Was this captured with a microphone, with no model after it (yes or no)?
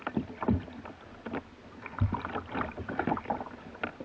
yes